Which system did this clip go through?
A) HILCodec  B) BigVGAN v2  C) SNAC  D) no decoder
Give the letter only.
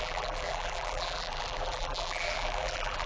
B